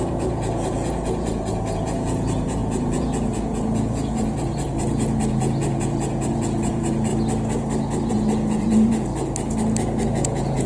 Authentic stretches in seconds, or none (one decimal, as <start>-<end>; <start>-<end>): 7.1-8.1; 9.1-10.1